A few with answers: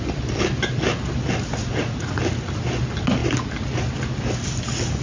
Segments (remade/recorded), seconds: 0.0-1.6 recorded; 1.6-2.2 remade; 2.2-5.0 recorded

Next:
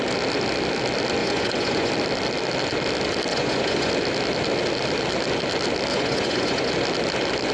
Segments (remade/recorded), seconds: 0.0-1.2 recorded; 1.2-1.9 remade; 1.9-3.3 recorded; 3.3-3.9 remade; 3.9-5.9 recorded; 5.9-6.7 remade; 6.7-7.5 recorded

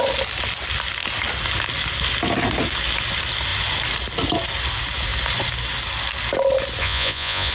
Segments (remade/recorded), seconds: 0.0-6.8 recorded; 6.8-7.5 remade

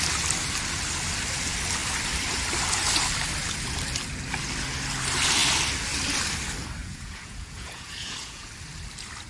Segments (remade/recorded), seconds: 0.0-6.8 recorded; 6.8-8.5 remade; 8.5-9.3 recorded